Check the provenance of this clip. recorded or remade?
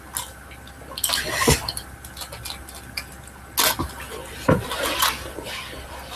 recorded